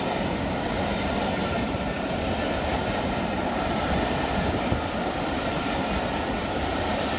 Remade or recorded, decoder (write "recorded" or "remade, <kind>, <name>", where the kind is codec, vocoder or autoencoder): remade, vocoder, BigVGAN v2